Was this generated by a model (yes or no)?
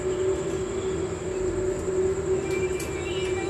no